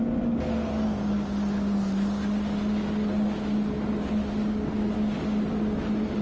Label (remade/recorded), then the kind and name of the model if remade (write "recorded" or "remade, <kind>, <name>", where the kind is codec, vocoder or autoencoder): recorded